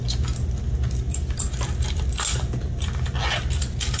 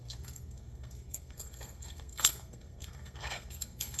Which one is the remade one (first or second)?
second